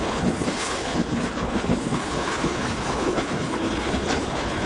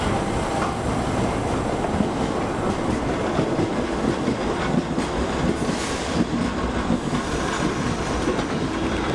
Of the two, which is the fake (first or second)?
first